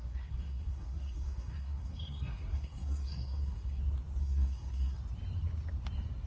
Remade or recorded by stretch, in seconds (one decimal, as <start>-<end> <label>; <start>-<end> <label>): 0.0-3.8 remade; 3.8-4.2 recorded; 4.2-5.0 remade; 5.0-6.3 recorded